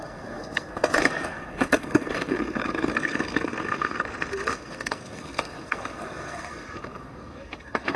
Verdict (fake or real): fake